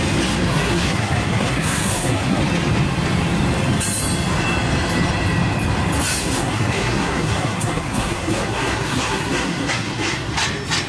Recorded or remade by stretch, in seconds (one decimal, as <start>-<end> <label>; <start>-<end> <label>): 0.0-0.5 recorded; 0.5-2.4 remade; 2.4-6.2 recorded; 6.2-10.3 remade; 10.3-10.9 recorded